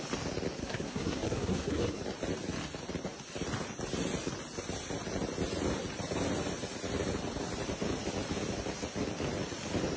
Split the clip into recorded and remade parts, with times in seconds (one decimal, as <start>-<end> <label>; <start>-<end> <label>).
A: 0.0-0.6 recorded; 0.6-2.0 remade; 2.0-10.0 recorded